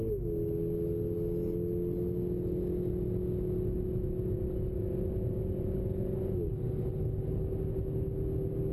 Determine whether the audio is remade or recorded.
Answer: recorded